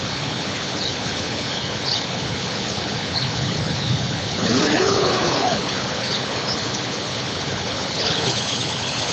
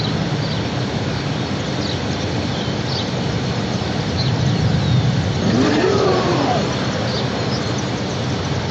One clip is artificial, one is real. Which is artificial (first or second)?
first